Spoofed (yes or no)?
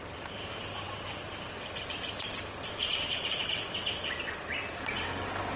no